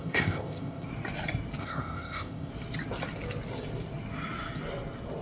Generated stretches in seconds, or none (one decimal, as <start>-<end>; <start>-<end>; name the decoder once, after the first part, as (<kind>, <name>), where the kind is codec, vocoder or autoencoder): 0.0-0.9 (codec, ZipCodec); 1.6-2.5

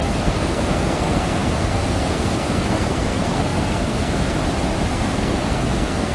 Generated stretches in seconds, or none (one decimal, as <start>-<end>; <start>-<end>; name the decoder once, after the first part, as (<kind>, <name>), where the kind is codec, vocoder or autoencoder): 0.0-4.4 (codec, SNAC); 4.9-6.1

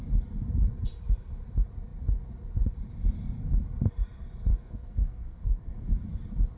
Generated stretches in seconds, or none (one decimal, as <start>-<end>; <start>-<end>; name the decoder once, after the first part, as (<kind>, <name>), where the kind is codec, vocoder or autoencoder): 4.5-5.9 (codec, SNAC)

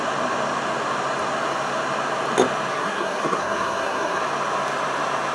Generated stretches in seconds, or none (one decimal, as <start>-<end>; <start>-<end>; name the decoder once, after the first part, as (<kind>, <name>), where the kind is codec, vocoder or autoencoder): 2.7-4.2 (codec, SNAC)